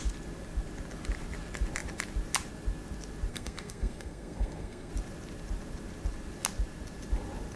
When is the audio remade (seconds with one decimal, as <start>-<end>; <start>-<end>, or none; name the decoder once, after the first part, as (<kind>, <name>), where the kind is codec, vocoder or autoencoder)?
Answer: 3.3-4.9 (codec, SNAC)

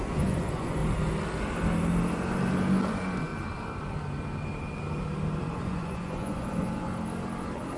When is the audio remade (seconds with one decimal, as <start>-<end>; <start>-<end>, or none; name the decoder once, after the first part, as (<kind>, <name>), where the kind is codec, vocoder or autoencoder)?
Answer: 0.0-0.8 (vocoder, Vocos); 2.9-3.3; 5.4-6.9

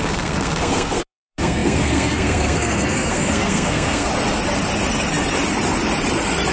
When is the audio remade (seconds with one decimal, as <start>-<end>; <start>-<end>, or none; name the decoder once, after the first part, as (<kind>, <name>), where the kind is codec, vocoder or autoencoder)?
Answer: 0.0-4.1 (codec, SNAC)

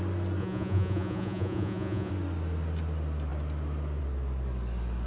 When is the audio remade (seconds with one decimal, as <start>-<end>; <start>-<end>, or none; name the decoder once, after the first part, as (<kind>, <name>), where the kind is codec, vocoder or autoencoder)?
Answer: 0.4-2.1 (vocoder, Vocos)

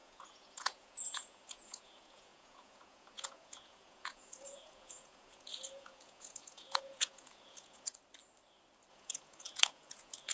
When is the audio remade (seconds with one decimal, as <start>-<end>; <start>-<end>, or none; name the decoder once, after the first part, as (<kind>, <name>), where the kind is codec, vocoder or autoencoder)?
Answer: 0.0-7.9 (vocoder, Vocos); 8.9-10.3

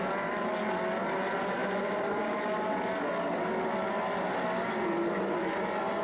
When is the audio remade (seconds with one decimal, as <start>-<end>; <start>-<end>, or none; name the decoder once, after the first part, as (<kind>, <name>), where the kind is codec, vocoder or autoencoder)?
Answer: none